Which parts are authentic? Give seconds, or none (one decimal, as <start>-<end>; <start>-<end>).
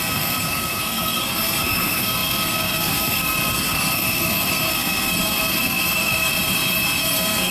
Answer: 6.3-7.0